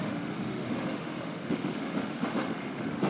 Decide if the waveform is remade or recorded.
remade